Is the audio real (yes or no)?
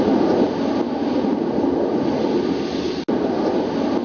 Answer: yes